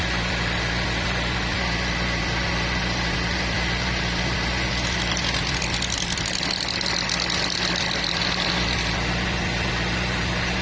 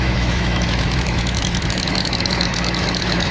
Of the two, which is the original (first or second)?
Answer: first